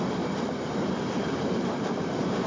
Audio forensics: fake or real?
real